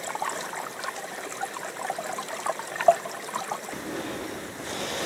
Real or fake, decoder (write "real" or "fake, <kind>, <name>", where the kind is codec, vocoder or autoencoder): real